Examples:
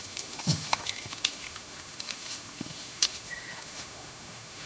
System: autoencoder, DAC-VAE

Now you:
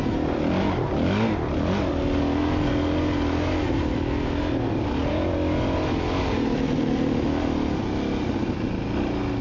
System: none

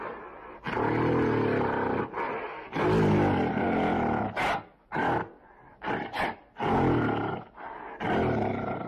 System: none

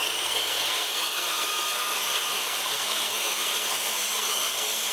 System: codec, SNAC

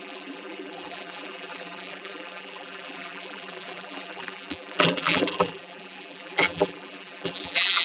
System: vocoder, BigVGAN v2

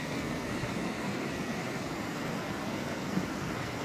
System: codec, SNAC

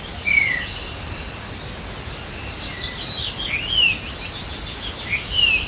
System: none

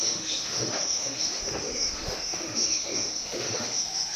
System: autoencoder, DAC-VAE